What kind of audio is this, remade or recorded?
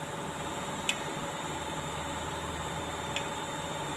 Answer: recorded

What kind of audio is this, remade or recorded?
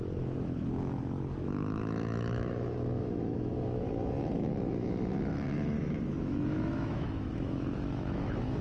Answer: remade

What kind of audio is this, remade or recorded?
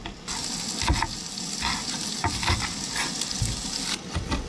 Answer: recorded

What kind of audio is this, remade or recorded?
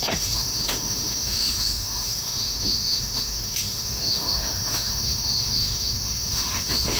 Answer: remade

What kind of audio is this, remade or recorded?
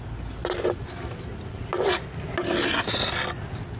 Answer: recorded